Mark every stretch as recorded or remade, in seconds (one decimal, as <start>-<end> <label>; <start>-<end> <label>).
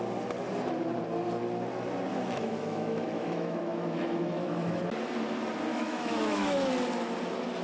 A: 0.0-2.1 recorded; 2.1-4.8 remade; 4.8-5.7 recorded; 5.7-6.7 remade; 6.7-7.6 recorded